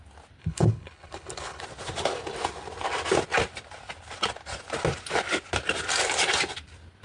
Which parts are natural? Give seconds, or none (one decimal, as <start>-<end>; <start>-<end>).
0.0-0.4; 1.6-7.0

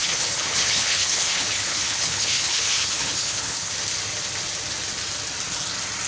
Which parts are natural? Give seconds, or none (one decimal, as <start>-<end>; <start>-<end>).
3.7-6.1

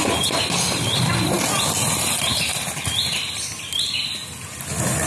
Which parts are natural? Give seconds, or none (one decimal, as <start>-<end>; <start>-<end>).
0.0-5.1

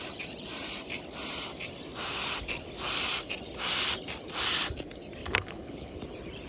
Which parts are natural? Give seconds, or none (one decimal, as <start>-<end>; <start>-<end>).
0.0-5.2; 6.0-6.5

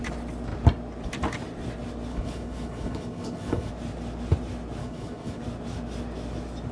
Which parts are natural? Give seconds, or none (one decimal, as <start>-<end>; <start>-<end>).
0.0-2.1; 3.7-4.8; 5.4-6.7

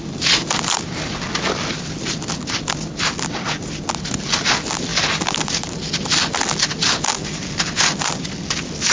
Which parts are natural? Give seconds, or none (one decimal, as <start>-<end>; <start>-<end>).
0.0-8.9

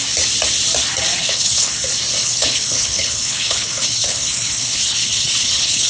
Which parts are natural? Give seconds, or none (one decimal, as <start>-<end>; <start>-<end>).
0.0-1.2; 1.7-2.2